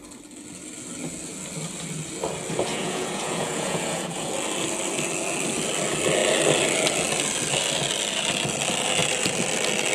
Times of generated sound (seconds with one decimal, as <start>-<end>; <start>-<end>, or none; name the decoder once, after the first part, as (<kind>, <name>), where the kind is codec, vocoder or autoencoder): 2.7-4.3 (vocoder, Vocos)